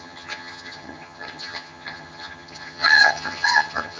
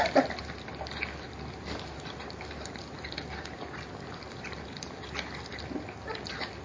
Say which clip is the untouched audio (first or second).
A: second